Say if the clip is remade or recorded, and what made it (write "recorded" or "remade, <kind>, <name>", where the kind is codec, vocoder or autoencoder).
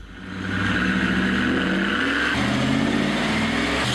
recorded